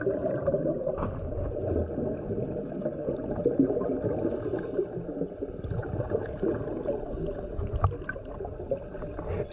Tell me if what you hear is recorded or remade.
recorded